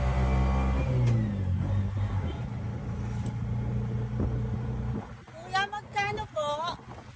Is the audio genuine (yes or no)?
yes